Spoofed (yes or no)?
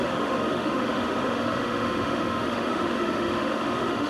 yes